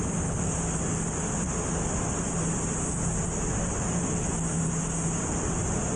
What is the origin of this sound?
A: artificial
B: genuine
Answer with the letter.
B